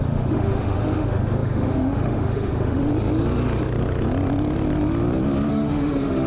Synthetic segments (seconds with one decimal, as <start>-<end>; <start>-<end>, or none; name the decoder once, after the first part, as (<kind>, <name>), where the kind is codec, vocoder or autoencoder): 0.0-2.9 (autoencoder, DAC-VAE); 5.5-6.3